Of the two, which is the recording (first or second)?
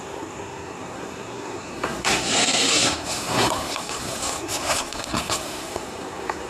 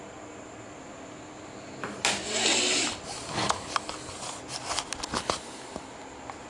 second